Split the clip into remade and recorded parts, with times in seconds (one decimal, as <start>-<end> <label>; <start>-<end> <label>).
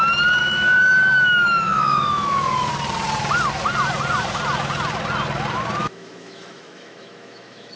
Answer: 0.0-0.4 recorded; 0.4-2.7 remade; 2.7-5.8 recorded; 5.8-7.8 remade